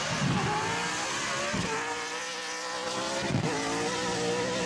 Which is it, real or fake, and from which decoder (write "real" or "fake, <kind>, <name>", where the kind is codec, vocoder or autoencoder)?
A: real